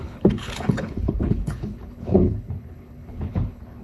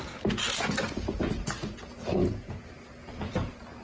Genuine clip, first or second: second